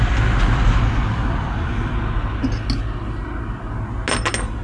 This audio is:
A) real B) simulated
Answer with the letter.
A